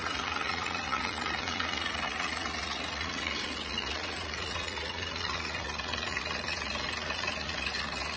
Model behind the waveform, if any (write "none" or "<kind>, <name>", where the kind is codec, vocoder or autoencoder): vocoder, Vocos